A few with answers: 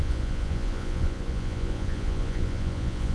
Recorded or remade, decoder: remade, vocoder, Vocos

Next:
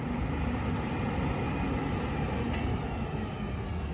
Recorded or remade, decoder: recorded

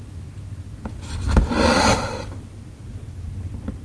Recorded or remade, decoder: recorded